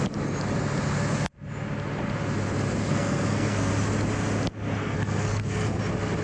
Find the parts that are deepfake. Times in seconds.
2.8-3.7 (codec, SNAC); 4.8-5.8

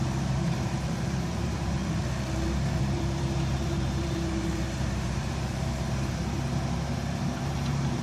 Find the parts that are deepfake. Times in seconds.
0.0-1.8 (vocoder, BigVGAN v2); 2.8-8.0